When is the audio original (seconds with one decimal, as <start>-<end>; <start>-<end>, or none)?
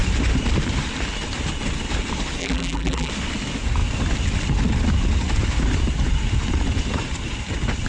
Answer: 0.0-2.4; 3.1-7.9